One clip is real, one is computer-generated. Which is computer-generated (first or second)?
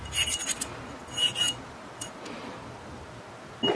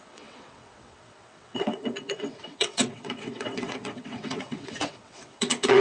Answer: second